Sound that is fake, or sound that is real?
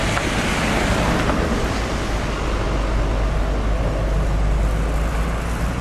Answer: real